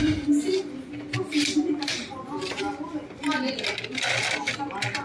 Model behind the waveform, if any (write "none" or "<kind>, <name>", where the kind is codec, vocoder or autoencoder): none